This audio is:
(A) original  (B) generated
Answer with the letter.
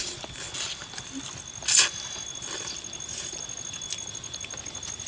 A